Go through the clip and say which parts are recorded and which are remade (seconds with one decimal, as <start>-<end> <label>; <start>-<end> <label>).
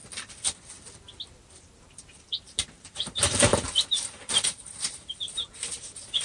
0.0-1.6 recorded; 1.6-6.2 remade